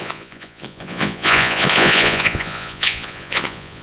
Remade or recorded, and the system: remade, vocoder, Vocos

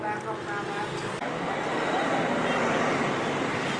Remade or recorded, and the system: recorded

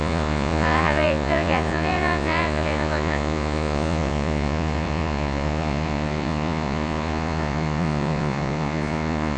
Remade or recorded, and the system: remade, vocoder, Vocos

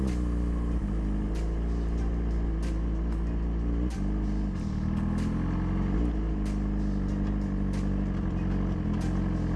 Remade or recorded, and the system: recorded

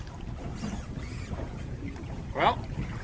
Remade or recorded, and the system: recorded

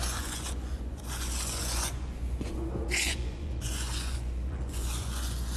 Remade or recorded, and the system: remade, vocoder, Vocos